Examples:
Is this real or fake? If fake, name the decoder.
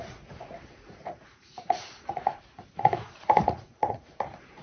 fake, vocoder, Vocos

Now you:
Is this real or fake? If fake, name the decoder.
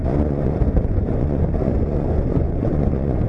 fake, vocoder, Vocos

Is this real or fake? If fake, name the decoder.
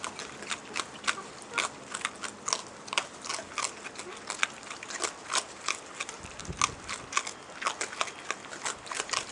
real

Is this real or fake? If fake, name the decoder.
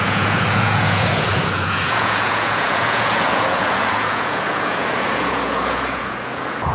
fake, vocoder, Vocos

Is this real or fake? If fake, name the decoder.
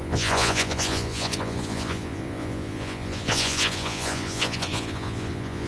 fake, vocoder, Vocos